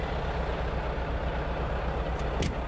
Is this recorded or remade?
recorded